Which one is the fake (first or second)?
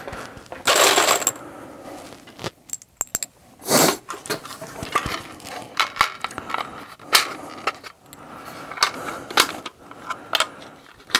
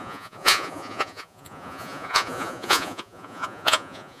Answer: second